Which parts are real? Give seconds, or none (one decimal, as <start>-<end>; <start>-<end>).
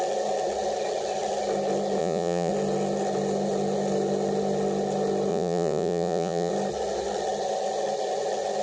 0.0-2.0; 2.5-5.3; 6.5-8.6